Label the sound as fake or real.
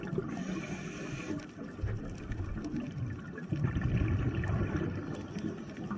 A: real